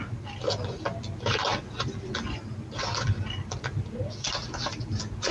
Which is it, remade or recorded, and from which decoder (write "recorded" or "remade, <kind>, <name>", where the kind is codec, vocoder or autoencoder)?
recorded